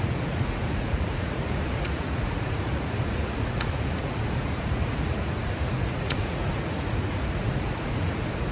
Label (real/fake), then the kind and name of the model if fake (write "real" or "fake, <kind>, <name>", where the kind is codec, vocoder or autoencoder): fake, vocoder, Vocos